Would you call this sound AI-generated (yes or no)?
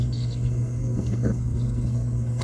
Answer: yes